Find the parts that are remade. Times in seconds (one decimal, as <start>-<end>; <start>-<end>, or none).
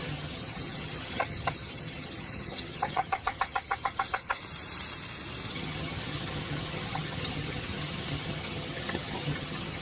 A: 0.0-4.4; 5.5-9.8